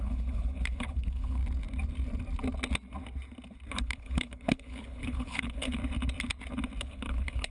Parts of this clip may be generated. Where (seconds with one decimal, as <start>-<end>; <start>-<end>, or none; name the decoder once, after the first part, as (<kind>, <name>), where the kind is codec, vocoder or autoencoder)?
0.0-1.4 (codec, HILCodec); 3.7-5.8; 6.8-7.5